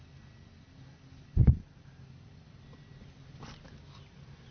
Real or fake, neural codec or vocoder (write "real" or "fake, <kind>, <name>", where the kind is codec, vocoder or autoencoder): real